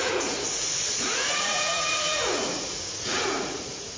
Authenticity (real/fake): fake